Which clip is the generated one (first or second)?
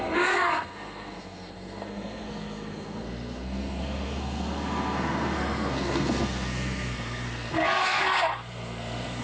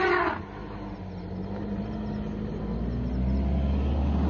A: first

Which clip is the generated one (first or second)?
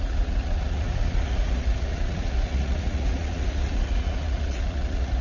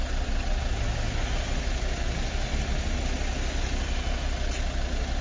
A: first